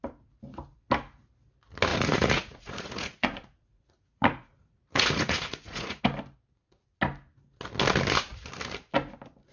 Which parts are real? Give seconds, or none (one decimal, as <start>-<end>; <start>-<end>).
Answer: 0.0-1.9; 6.0-9.5